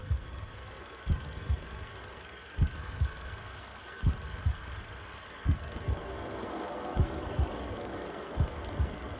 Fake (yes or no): yes